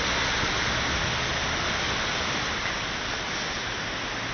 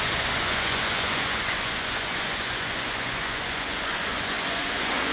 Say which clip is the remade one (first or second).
second